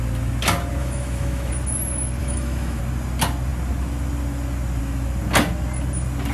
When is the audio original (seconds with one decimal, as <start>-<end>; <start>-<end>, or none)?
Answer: 0.0-0.8; 1.5-2.2; 2.8-6.3